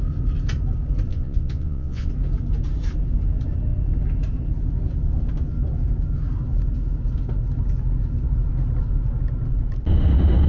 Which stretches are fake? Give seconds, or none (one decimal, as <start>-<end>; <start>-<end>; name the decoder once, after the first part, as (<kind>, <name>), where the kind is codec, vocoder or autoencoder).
1.1-2.1 (vocoder, Vocos)